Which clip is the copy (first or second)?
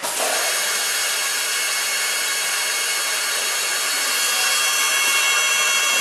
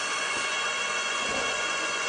second